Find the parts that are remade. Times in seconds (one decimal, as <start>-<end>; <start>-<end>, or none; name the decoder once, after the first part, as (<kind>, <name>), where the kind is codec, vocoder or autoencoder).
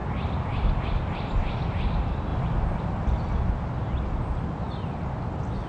none